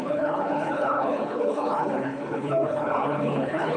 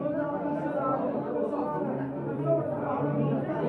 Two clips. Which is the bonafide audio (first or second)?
second